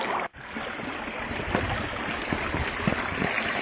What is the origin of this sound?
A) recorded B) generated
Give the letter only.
A